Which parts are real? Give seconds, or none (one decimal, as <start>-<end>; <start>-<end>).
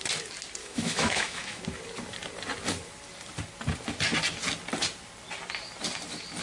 0.0-0.6; 1.6-6.4